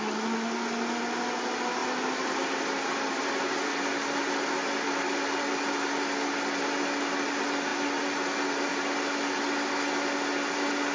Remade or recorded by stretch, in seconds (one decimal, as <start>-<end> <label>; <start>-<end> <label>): 0.0-10.9 recorded